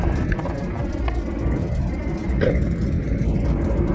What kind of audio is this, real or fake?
real